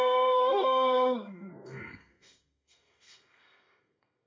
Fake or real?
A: fake